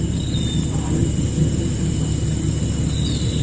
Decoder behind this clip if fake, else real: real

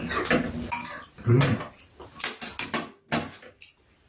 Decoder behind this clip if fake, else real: real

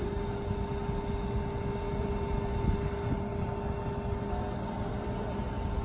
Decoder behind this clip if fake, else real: real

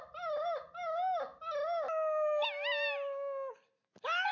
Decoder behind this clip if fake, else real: real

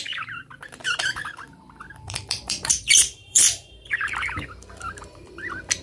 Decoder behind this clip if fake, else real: fake, vocoder, BigVGAN v2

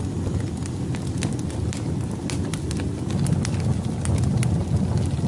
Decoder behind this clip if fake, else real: real